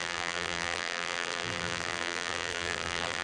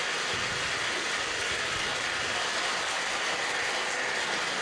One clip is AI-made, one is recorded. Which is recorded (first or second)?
second